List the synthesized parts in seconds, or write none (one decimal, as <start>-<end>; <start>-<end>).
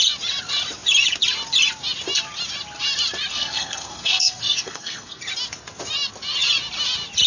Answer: 3.3-5.2